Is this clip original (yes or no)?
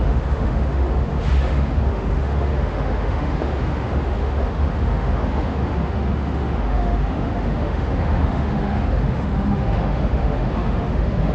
no